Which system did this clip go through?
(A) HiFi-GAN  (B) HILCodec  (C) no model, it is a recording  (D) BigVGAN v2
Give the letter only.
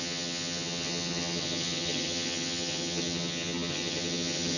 A